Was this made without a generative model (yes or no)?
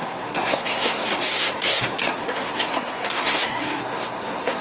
no